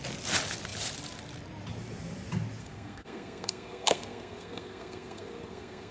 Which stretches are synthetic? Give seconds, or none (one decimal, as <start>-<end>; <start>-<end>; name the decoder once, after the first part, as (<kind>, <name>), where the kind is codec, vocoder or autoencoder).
2.6-5.9 (codec, SNAC)